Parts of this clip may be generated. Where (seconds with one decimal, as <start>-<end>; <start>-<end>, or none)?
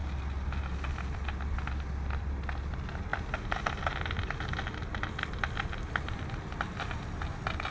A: none